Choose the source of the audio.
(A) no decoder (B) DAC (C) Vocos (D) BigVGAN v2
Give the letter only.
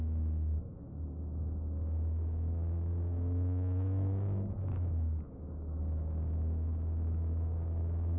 B